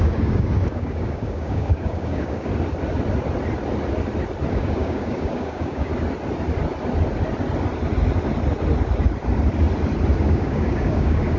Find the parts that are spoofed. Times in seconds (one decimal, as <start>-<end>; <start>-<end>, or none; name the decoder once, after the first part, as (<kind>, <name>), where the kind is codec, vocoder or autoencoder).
0.0-2.5 (codec, DAC); 4.5-5.9; 10.2-11.4